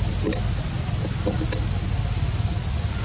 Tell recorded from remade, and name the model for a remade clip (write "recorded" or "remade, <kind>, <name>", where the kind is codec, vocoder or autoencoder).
recorded